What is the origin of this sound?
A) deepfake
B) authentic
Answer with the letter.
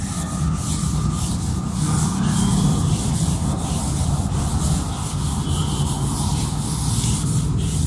B